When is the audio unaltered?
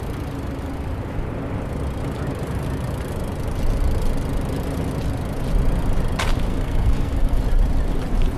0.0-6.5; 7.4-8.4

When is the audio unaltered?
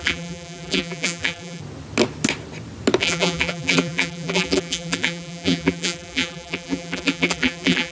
1.6-3.0